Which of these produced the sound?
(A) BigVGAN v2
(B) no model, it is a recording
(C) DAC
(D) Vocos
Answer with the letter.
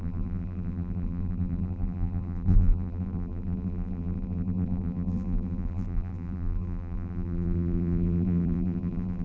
A